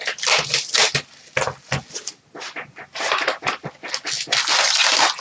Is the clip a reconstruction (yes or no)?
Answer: no